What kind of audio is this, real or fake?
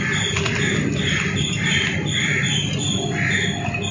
real